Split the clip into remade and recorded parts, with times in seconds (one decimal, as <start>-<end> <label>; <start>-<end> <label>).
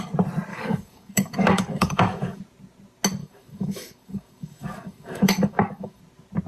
0.0-0.5 recorded; 0.5-2.4 remade; 2.4-3.2 recorded; 3.2-6.0 remade; 6.0-6.5 recorded